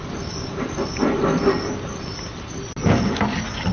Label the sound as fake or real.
real